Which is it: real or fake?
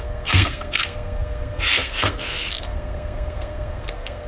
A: fake